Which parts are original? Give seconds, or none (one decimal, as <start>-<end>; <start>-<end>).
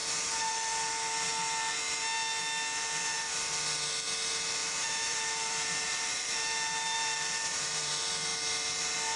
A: 0.5-4.6; 7.9-9.2